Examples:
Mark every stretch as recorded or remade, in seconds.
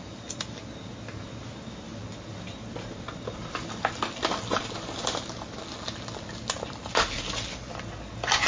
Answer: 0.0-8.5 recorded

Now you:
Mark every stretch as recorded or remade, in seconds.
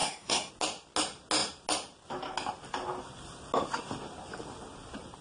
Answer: 0.0-0.5 remade; 0.5-5.2 recorded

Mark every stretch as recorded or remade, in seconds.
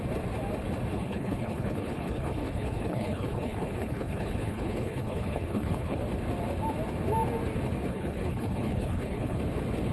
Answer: 0.0-0.9 recorded; 0.9-6.0 remade; 6.0-7.9 recorded; 7.9-9.4 remade; 9.4-9.9 recorded